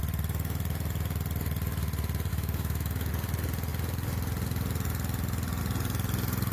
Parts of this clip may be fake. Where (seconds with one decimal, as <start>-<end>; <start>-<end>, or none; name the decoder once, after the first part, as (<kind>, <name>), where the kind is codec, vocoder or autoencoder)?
2.3-3.1 (autoencoder, DAC-VAE)